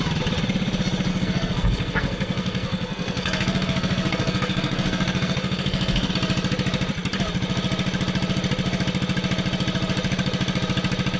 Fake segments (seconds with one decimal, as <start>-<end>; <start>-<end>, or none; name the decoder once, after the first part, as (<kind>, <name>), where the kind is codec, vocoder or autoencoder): 1.1-6.1 (codec, SNAC)